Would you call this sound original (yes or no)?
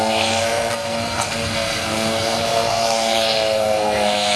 no